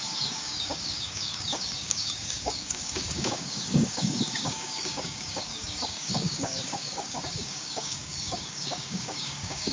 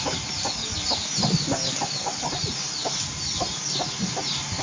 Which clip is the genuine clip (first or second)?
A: second